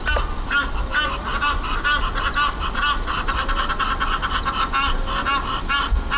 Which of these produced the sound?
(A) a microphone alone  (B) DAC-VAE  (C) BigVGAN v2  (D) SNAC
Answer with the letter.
A